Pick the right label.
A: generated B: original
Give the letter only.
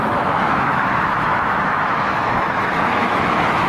A